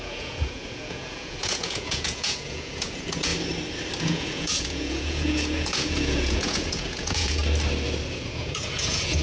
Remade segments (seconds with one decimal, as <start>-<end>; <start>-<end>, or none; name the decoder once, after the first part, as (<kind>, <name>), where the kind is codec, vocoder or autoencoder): 0.0-3.3 (vocoder, Vocos); 4.0-7.4; 8.2-9.2

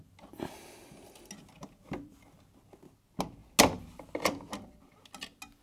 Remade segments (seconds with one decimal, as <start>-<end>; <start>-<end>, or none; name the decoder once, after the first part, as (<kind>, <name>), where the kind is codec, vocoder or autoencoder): none

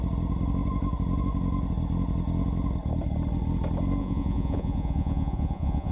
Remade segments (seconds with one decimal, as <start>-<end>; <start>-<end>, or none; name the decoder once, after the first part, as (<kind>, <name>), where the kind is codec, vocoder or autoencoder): 4.0-5.9 (vocoder, Vocos)

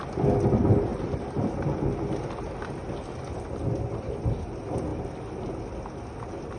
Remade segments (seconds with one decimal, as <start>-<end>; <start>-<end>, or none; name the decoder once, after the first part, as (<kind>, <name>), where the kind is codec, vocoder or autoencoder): none

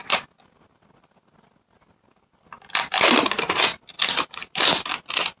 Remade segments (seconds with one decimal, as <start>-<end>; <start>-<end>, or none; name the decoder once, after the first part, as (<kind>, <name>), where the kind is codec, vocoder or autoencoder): none